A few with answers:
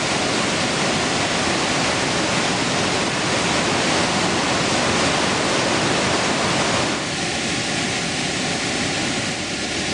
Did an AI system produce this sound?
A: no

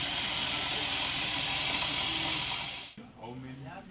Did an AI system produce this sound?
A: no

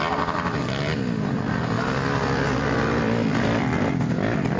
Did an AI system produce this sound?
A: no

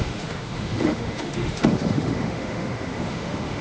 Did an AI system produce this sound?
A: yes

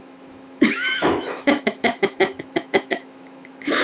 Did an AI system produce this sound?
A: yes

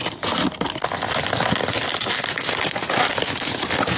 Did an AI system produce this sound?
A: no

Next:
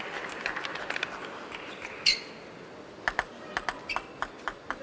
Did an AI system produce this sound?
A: no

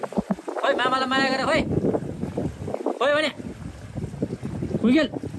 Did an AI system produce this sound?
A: no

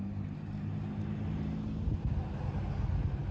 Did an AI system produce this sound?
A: no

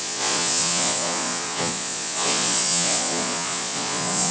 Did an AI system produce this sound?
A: yes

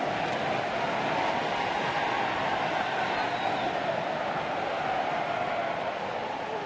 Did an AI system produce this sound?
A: yes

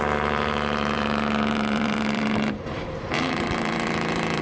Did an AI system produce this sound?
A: yes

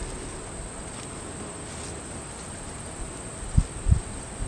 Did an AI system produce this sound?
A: no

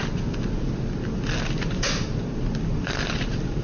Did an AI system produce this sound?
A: no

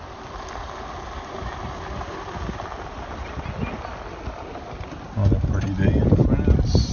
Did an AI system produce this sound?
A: no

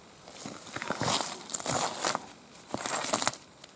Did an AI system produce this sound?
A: no